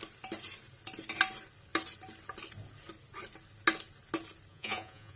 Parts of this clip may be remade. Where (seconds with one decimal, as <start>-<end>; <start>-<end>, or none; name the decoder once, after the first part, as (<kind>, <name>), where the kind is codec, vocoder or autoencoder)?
4.5-5.2 (vocoder, Vocos)